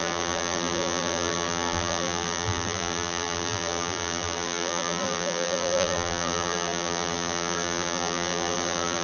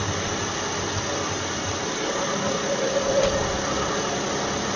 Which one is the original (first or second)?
second